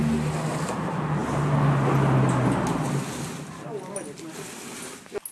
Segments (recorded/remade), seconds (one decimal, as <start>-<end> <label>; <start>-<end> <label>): 0.0-5.3 recorded